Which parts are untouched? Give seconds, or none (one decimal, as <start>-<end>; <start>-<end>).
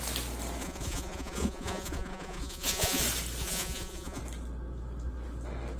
0.0-0.6; 3.0-3.4; 4.2-5.8